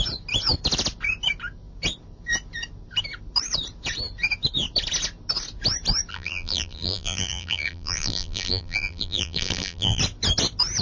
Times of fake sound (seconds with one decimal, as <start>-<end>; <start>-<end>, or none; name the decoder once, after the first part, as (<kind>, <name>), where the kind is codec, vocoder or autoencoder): 6.1-10.0 (vocoder, BigVGAN v2)